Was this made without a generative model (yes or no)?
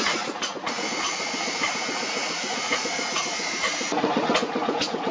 no